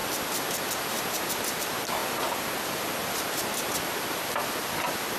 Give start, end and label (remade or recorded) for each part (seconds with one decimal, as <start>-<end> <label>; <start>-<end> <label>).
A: 0.0-5.2 recorded